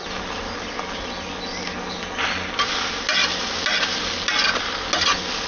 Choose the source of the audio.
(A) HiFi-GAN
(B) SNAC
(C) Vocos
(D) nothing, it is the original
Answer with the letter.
D